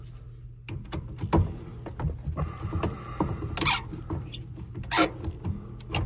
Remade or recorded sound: recorded